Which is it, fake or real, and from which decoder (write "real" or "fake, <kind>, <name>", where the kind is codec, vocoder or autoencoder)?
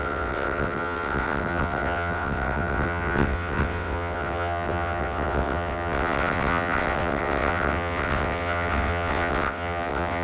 fake, vocoder, WaveNeXt